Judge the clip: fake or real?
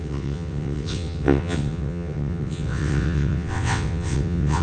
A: fake